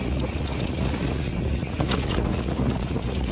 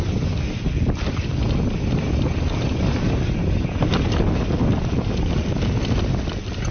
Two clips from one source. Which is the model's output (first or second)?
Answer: first